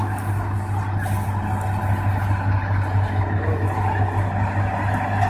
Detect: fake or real real